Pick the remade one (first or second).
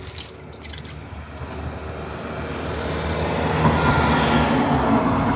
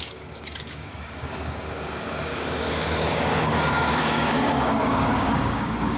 second